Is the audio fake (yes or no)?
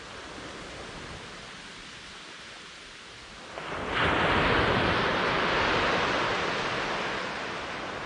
no